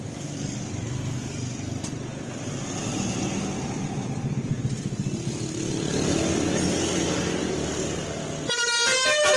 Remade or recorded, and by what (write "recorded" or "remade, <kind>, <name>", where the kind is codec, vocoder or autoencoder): recorded